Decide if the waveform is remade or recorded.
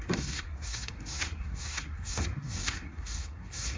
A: remade